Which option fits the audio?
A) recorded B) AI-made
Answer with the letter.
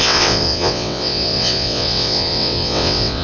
B